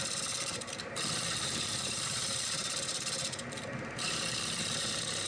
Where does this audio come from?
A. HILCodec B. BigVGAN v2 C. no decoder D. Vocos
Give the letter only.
B